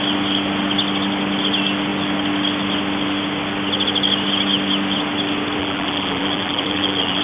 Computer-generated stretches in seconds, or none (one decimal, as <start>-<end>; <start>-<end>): 5.6-7.2